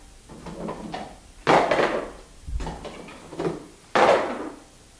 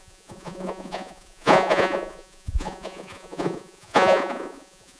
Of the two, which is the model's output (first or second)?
second